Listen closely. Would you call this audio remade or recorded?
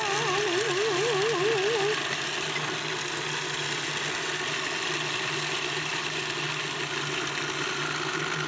recorded